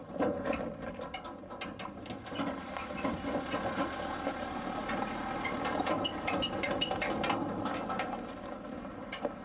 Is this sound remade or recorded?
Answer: recorded